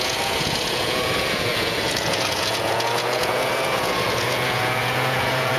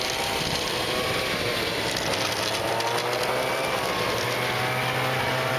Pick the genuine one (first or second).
second